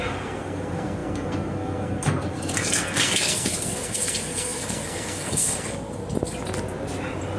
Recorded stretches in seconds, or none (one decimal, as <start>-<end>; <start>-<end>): 6.0-7.4